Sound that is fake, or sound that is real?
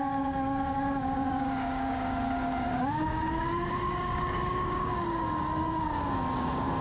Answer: fake